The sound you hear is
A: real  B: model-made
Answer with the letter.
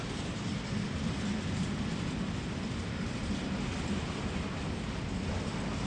A